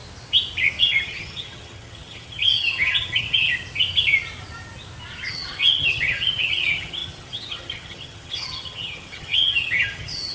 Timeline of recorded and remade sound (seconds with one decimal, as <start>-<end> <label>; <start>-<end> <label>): 0.0-0.8 recorded; 0.8-3.5 remade; 3.5-5.3 recorded; 5.3-10.3 remade